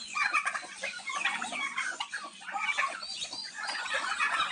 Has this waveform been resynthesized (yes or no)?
yes